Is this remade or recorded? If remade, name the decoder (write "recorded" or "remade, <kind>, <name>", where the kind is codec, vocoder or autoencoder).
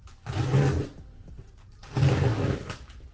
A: recorded